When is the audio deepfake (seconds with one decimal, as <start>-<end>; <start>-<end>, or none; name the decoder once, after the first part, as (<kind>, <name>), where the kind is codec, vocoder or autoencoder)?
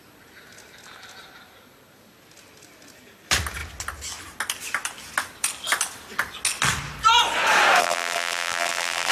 7.8-9.1 (vocoder, BigVGAN v2)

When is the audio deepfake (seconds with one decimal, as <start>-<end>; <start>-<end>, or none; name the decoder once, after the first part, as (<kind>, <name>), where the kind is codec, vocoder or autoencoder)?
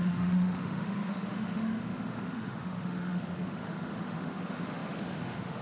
0.0-5.6 (autoencoder, DAC-VAE)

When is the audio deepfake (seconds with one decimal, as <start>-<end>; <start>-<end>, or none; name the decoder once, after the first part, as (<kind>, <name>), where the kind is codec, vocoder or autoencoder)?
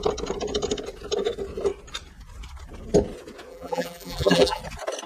3.5-4.6 (vocoder, BigVGAN v2)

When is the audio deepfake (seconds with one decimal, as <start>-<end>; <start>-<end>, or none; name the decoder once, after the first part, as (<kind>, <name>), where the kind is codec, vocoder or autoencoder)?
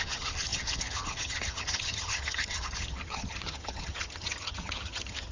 0.0-5.3 (vocoder, HiFi-GAN)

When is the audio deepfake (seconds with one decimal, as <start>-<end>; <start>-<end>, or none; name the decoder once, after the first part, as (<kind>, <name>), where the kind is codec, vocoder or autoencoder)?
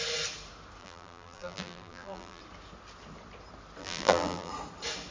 0.8-2.4 (vocoder, BigVGAN v2); 3.8-4.5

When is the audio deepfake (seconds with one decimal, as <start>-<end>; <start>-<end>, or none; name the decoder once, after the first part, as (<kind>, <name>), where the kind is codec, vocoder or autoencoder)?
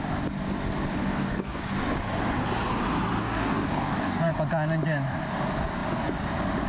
1.0-1.6 (codec, DAC); 3.2-4.3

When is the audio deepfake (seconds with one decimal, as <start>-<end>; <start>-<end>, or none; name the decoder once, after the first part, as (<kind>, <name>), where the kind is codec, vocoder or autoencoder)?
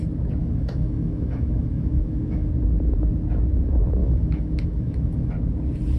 0.4-2.5 (autoencoder, DAC-VAE); 4.0-5.3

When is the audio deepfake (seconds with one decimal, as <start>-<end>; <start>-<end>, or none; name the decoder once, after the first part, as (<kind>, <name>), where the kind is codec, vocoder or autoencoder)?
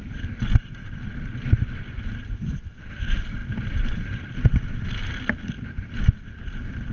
none